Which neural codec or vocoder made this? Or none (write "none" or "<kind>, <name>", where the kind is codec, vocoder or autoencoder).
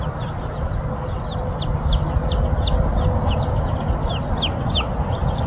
none